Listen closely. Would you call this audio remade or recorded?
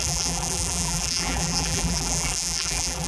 remade